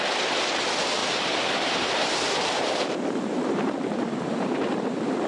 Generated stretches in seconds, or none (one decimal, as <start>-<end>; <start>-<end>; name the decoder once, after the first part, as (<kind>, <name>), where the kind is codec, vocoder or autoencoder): 1.0-2.9 (vocoder, BigVGAN v2); 3.4-5.3